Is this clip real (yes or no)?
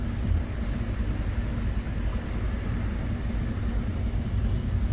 yes